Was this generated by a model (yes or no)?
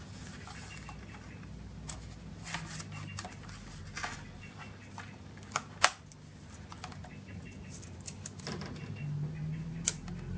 no